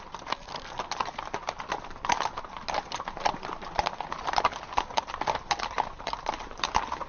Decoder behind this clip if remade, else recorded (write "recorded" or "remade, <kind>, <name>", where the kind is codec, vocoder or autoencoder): recorded